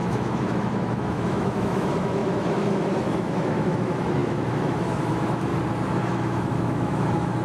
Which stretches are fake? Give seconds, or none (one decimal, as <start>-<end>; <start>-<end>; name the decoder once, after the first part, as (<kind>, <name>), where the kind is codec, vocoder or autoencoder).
0.0-5.5 (autoencoder, DAC-VAE); 6.0-7.4